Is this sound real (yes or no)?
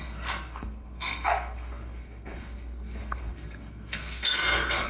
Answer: no